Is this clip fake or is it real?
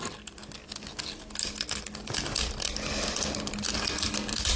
real